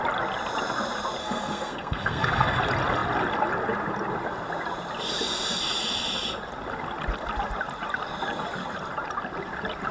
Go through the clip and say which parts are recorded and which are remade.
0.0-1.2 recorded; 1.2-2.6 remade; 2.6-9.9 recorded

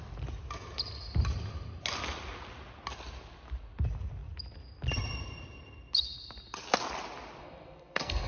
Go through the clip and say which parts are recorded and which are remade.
0.0-7.4 recorded; 7.4-8.3 remade

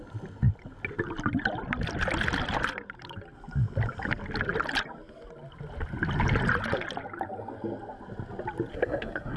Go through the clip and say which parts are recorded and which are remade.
0.0-8.7 recorded; 8.7-9.4 remade

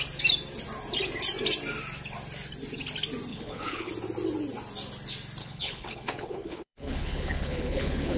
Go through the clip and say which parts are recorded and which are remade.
0.0-3.3 recorded; 3.3-3.9 remade; 3.9-5.4 recorded; 5.4-8.2 remade

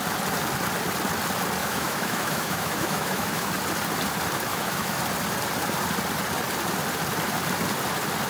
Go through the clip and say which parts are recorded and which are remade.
0.0-1.6 recorded; 1.6-3.5 remade; 3.5-4.5 recorded; 4.5-5.0 remade; 5.0-8.3 recorded